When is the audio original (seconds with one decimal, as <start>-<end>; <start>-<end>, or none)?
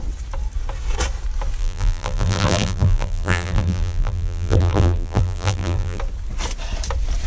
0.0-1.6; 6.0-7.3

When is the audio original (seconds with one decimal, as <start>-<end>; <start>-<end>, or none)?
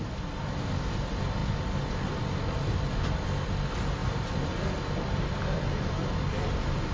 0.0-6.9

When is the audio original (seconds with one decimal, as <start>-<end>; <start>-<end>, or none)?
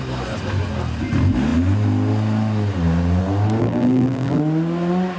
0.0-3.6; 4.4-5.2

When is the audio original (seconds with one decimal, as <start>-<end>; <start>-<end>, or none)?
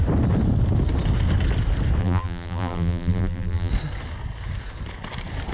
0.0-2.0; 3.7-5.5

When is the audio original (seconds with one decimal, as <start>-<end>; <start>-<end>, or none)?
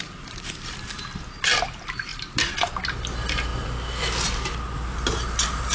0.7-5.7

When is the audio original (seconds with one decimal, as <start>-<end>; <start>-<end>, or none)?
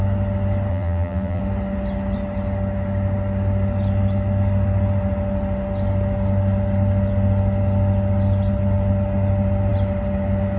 0.0-0.7; 1.4-10.6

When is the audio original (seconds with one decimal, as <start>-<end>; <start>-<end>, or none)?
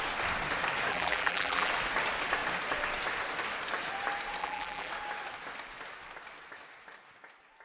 0.0-0.9; 1.7-4.4; 4.9-7.6